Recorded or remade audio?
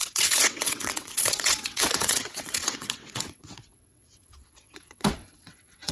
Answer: remade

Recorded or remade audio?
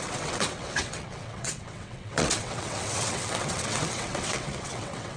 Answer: remade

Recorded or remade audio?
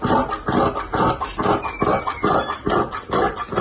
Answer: recorded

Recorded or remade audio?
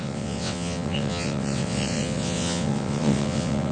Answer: remade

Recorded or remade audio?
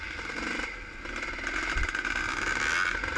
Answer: recorded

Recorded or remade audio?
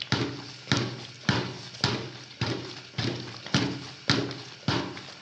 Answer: recorded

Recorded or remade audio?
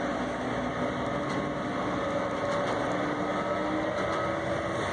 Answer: recorded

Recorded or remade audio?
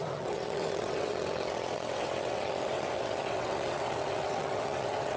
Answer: remade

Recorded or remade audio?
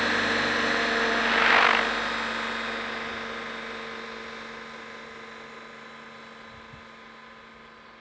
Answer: recorded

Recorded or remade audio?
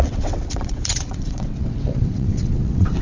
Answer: remade